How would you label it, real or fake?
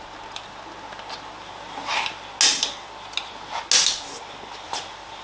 real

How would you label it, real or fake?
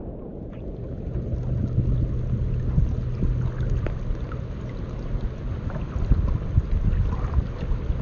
real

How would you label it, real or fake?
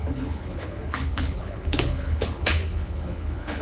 fake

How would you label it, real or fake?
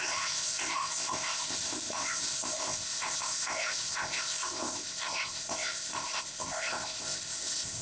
fake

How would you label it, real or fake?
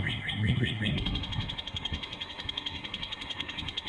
fake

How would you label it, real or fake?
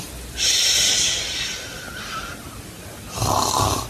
real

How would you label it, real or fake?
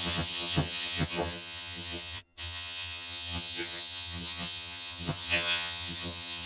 fake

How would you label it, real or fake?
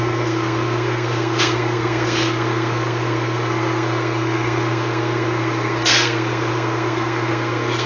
fake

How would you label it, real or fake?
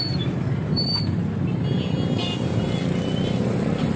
real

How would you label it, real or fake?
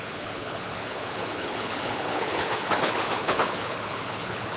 fake